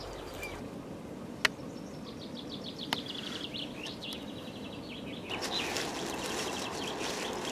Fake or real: real